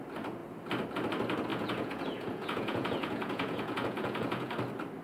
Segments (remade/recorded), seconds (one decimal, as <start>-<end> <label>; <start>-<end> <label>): 0.0-1.5 recorded; 1.5-4.5 remade; 4.5-5.0 recorded